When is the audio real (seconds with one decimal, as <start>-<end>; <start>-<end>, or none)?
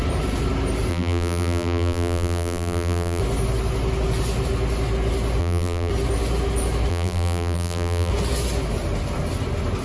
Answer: 0.0-0.9; 3.2-5.4; 5.9-6.9; 8.1-9.8